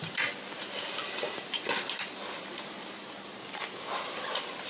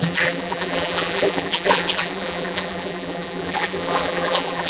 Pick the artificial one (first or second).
second